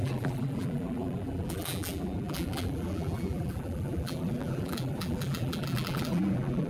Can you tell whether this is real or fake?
fake